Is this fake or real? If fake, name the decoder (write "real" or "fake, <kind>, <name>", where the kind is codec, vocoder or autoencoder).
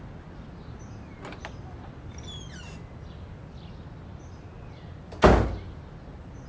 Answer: real